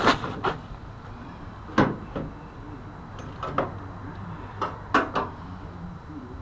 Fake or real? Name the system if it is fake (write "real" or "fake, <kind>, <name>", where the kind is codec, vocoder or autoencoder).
real